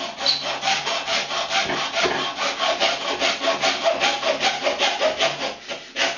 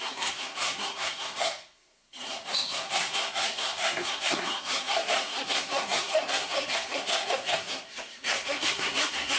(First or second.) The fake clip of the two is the second